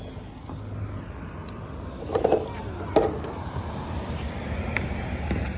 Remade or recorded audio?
recorded